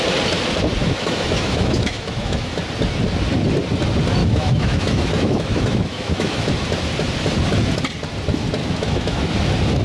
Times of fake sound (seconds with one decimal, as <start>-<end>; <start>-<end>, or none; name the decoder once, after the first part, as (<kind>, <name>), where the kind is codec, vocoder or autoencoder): 0.8-2.6 (autoencoder, DAC-VAE); 4.2-6.5; 8.6-9.3